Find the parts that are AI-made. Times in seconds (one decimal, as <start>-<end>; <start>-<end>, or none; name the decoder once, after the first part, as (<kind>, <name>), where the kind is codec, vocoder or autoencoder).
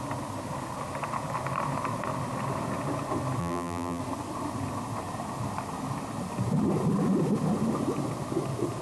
3.4-4.0 (vocoder, BigVGAN v2)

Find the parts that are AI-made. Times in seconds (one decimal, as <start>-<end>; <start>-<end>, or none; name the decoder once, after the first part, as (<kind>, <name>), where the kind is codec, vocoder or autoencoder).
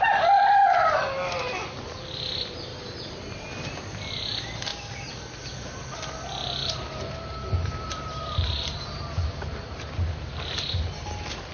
2.7-3.4 (vocoder, BigVGAN v2); 6.6-10.7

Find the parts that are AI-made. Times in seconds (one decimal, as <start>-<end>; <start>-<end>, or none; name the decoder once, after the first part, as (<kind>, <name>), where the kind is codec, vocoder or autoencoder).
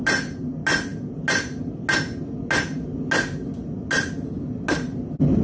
none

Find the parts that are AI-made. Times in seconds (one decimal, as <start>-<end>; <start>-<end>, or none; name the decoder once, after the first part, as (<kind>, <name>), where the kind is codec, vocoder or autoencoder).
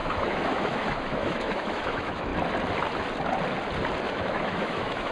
0.0-2.3 (autoencoder, DAC-VAE); 4.1-5.1